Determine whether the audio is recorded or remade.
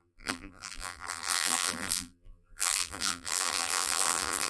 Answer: remade